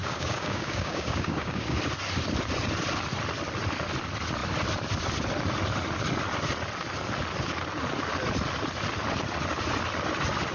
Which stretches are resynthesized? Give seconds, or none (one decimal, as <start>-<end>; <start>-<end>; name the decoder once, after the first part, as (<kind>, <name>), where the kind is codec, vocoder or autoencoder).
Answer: 0.0-1.8 (codec, DAC)